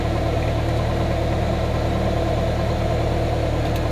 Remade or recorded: recorded